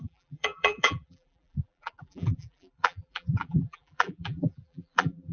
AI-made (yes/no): yes